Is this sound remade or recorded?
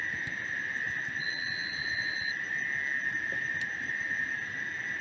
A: recorded